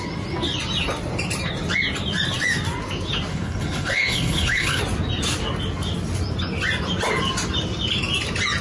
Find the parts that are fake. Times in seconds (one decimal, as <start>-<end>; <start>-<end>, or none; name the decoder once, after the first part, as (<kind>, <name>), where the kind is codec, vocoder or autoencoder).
3.3-4.8 (codec, HILCodec)